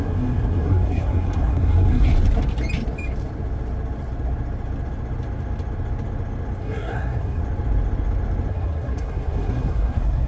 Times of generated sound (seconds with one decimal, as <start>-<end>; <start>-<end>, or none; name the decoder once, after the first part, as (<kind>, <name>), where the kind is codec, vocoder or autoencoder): 0.0-2.1 (codec, SNAC); 6.6-7.4; 8.5-10.3